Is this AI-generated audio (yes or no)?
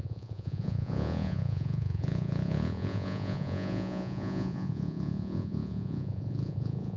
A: yes